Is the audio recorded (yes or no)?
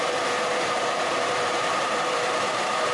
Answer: no